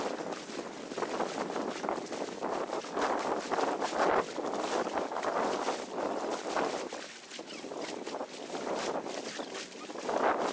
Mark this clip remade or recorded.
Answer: recorded